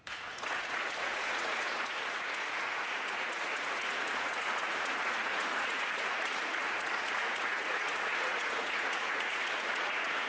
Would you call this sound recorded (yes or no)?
no